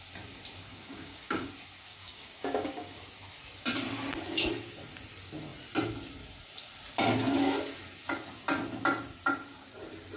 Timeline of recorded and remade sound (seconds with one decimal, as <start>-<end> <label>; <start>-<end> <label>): 0.0-0.7 recorded; 0.7-1.5 remade; 1.5-1.9 recorded; 1.9-3.0 remade; 3.0-10.2 recorded

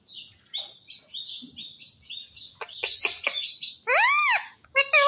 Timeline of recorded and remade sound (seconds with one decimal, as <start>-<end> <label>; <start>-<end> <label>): 0.0-2.5 recorded; 2.5-3.4 remade; 3.4-5.1 recorded